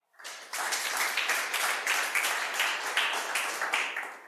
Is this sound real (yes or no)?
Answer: no